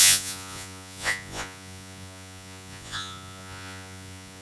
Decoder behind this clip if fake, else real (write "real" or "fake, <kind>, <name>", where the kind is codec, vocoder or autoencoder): fake, vocoder, Vocos